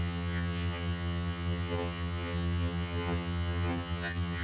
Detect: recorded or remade remade